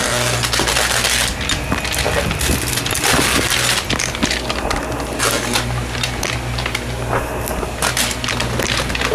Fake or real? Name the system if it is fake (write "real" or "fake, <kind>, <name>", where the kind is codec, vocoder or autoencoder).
real